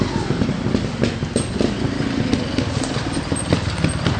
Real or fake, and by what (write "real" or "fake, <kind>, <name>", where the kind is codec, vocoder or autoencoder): real